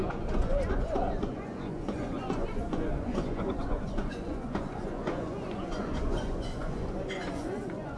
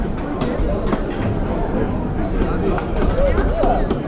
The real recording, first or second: second